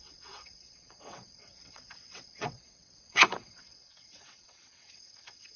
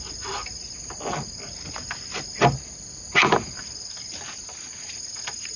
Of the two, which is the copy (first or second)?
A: first